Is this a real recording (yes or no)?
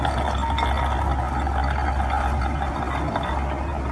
yes